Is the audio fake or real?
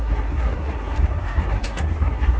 fake